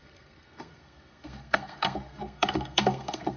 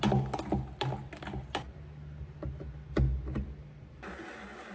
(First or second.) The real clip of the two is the second